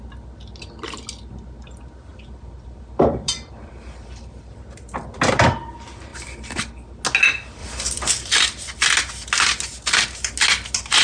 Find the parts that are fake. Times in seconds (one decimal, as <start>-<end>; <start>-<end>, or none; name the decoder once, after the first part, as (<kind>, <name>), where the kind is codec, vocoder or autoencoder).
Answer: 2.1-4.5 (vocoder, BigVGAN v2); 6.1-7.0; 7.6-8.1